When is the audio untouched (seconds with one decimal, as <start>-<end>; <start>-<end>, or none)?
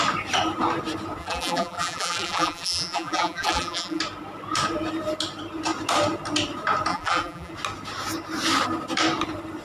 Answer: 0.0-1.2; 4.0-6.9; 7.5-9.6